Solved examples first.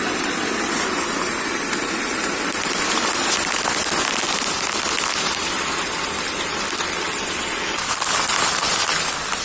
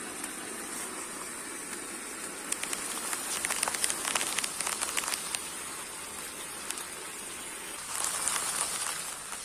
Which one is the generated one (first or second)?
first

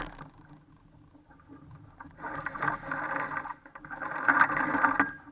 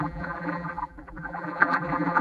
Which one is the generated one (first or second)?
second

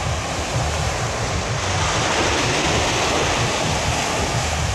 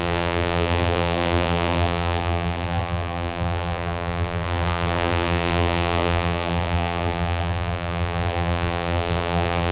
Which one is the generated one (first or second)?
second